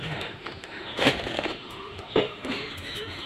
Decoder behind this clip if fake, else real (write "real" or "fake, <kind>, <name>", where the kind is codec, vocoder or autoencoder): fake, autoencoder, DAC-VAE